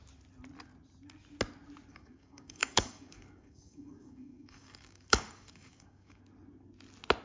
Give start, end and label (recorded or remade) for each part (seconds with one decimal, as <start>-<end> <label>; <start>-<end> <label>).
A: 0.0-1.9 recorded; 1.9-6.2 remade; 6.2-7.2 recorded

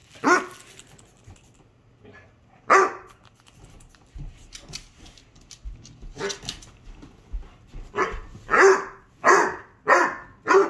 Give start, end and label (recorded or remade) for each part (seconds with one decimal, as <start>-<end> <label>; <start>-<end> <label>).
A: 0.0-10.7 recorded